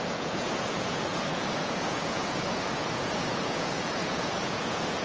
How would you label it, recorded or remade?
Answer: remade